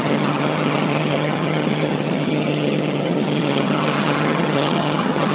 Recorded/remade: remade